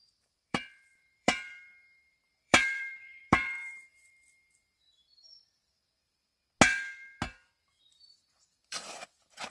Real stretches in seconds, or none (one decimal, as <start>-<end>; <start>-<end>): 6.3-7.8